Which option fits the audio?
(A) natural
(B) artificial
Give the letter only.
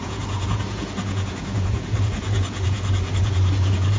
B